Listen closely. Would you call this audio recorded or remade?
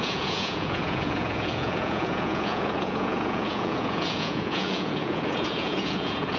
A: remade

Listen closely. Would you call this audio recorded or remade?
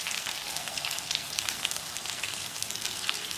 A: remade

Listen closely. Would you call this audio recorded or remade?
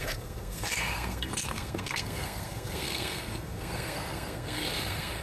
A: remade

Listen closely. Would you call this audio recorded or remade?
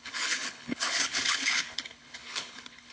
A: remade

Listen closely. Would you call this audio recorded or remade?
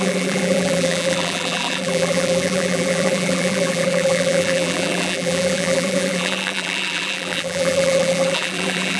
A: remade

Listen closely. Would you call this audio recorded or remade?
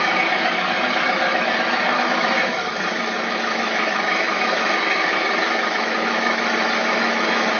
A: remade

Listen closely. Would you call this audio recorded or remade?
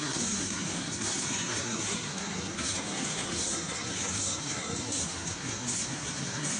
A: remade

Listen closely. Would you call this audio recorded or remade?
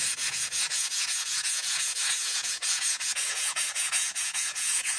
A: remade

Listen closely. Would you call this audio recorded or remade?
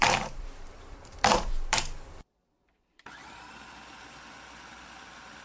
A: remade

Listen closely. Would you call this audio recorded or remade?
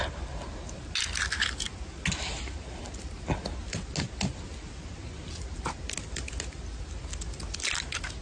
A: recorded